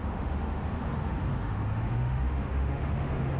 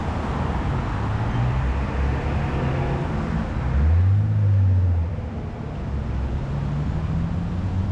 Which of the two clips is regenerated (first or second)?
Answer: first